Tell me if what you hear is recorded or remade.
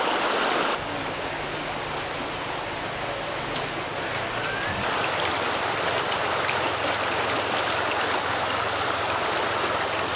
recorded